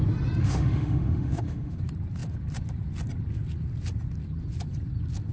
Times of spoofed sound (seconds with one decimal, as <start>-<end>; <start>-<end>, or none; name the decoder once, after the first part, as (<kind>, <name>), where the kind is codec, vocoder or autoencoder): 0.4-1.8 (autoencoder, DAC-VAE)